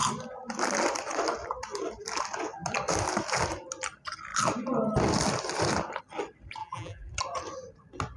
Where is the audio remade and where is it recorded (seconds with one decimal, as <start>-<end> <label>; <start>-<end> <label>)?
0.0-6.6 recorded; 6.6-7.1 remade; 7.1-8.2 recorded